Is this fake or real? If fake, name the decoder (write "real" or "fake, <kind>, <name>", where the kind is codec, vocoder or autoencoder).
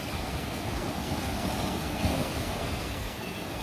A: fake, codec, SNAC